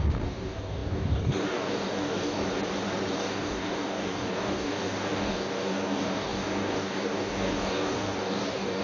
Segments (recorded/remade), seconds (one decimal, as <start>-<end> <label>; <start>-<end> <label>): 0.0-2.4 remade; 2.4-3.1 recorded; 3.1-8.8 remade